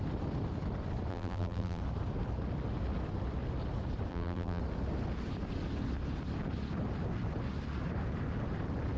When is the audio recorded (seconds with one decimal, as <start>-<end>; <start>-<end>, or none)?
0.0-1.1; 1.8-4.1; 4.6-9.0